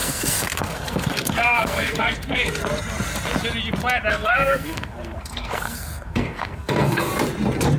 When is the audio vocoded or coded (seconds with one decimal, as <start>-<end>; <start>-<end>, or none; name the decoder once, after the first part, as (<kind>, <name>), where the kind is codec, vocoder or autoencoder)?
0.0-2.6 (codec, SNAC); 4.1-7.1